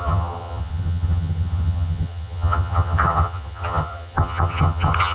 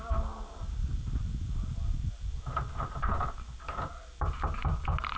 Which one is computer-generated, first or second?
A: first